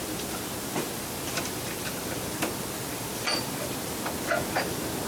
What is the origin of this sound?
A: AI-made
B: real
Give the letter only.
B